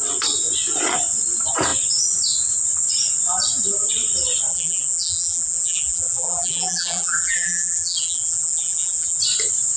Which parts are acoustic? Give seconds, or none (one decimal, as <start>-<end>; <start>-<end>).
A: 0.0-4.5; 9.2-9.8